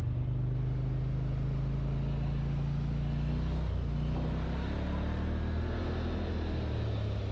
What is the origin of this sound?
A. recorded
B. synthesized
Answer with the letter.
A